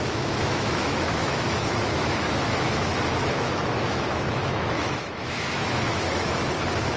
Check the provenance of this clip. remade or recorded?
remade